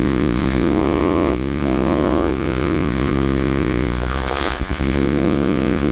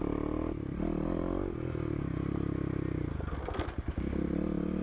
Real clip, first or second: second